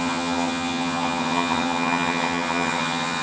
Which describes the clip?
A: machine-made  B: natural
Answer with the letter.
A